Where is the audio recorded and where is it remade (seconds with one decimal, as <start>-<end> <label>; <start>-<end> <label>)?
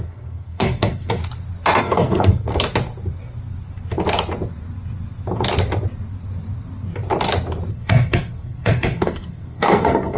0.0-1.2 remade; 1.2-1.8 recorded; 1.8-2.5 remade; 2.5-7.7 recorded; 7.7-10.2 remade